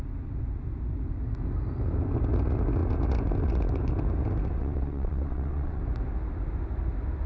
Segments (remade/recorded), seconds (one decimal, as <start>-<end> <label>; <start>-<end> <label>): 0.0-4.6 recorded; 4.6-5.8 remade; 5.8-7.3 recorded